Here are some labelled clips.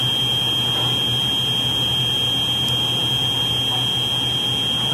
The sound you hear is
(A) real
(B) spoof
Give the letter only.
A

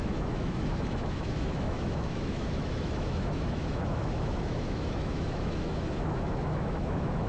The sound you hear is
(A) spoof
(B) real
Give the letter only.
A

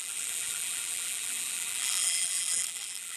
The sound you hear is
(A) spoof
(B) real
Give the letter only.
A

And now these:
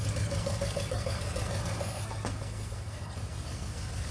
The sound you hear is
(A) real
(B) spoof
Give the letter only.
B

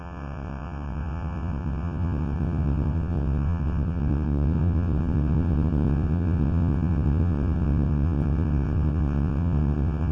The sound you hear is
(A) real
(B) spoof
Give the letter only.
B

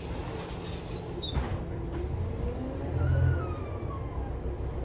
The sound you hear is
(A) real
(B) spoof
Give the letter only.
A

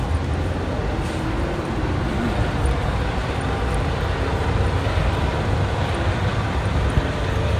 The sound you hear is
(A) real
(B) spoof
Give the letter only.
A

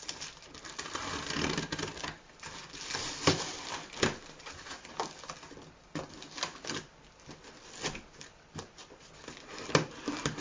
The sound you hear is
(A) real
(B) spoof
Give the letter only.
A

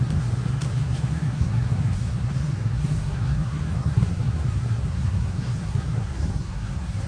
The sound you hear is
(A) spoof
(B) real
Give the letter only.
A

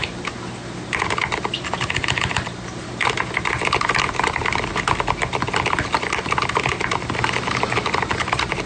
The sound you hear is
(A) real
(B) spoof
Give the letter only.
A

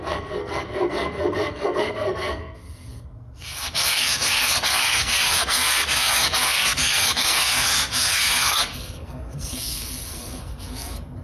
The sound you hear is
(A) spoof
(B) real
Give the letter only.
A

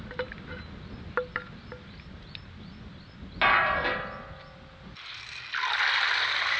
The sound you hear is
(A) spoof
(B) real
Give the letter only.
B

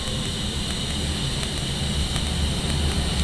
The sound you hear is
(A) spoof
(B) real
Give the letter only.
B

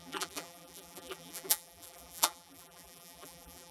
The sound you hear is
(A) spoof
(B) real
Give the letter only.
A